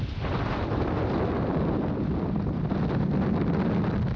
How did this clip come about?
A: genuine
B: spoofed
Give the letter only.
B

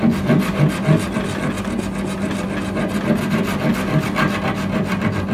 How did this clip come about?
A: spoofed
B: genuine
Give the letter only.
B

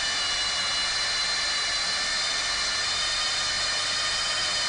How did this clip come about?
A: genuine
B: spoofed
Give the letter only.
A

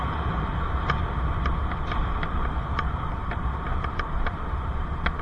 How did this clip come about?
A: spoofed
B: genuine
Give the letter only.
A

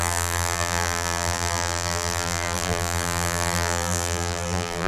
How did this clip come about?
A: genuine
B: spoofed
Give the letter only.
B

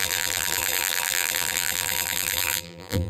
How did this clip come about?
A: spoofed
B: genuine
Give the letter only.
A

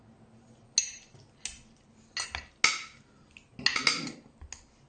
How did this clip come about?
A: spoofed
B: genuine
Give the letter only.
B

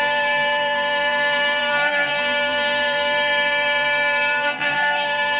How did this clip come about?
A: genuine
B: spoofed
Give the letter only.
B